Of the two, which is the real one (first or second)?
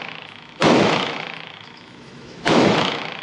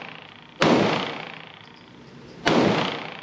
second